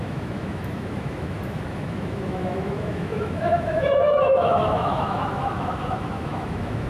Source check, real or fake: fake